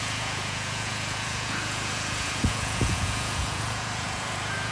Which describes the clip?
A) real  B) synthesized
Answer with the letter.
B